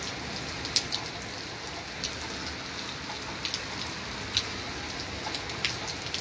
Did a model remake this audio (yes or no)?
no